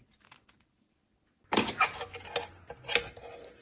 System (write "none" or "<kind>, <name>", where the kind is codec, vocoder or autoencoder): none